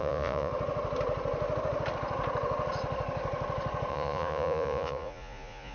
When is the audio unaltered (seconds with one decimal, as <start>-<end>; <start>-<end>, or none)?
0.5-3.9